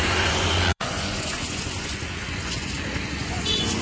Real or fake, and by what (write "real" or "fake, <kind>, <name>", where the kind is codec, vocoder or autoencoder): fake, vocoder, Vocos